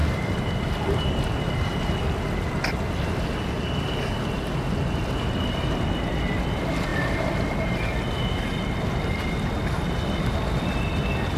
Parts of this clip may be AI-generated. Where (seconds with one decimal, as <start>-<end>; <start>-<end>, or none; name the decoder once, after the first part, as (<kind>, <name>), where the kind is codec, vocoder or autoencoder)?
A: 0.0-1.5 (vocoder, BigVGAN v2)